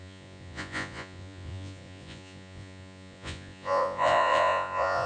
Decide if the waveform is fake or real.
fake